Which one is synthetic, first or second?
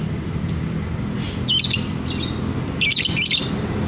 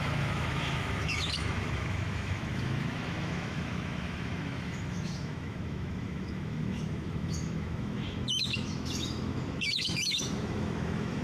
second